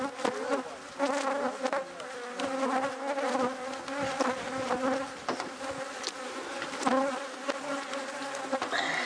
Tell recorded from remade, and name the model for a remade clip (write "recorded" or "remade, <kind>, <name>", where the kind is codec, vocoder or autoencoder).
recorded